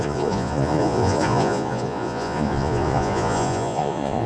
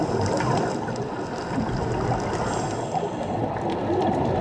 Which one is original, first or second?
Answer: second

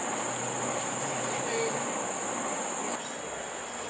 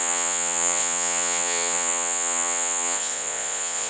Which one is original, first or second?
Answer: first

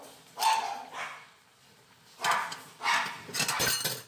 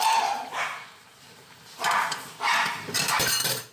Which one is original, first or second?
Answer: first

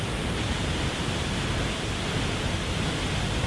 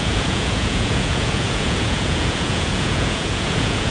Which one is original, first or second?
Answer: first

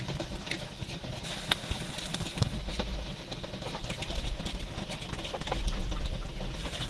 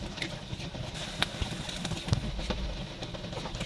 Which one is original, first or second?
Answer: first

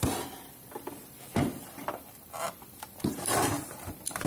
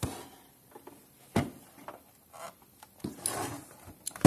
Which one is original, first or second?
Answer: second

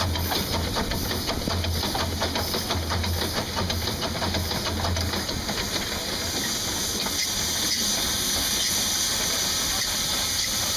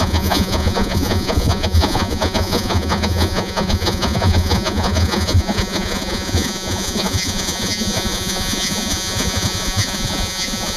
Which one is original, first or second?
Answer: first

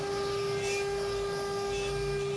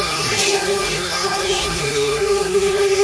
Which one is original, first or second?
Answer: first